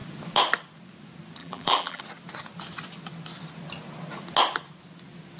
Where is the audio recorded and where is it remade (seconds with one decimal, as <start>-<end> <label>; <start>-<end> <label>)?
0.0-1.4 recorded; 1.4-2.0 remade; 2.0-5.4 recorded